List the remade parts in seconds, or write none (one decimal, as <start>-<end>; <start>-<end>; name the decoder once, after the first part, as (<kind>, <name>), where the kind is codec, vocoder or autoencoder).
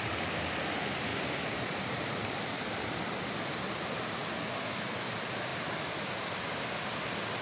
1.1-3.7 (vocoder, BigVGAN v2); 5.5-7.4